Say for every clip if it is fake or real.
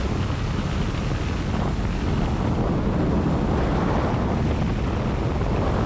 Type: real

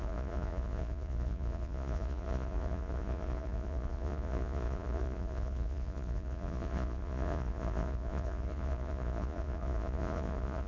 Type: fake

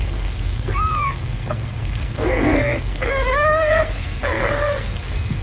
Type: fake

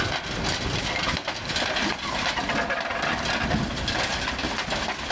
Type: real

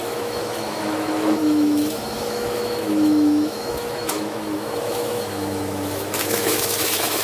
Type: fake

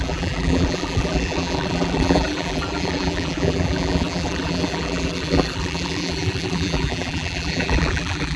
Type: fake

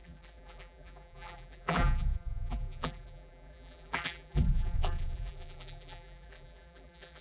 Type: fake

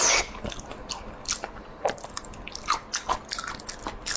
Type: real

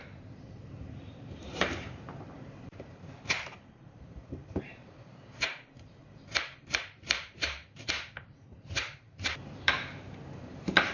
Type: fake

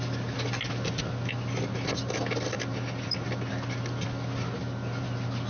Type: real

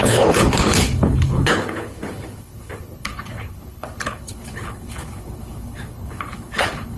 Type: fake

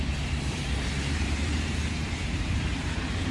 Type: fake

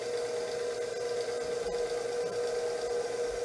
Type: real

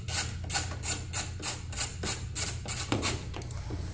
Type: real